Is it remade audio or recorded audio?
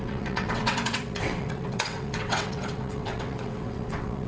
remade